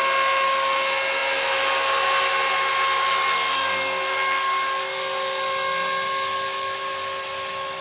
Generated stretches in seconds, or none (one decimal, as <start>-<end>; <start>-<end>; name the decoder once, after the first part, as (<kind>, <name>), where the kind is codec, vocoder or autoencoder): none